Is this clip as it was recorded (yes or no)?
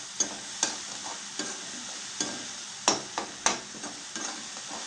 yes